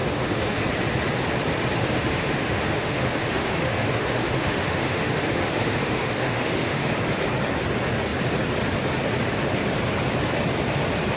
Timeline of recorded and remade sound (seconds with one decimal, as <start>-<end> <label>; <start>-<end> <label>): 0.0-0.6 remade; 0.6-1.8 recorded; 1.8-6.9 remade; 6.9-11.2 recorded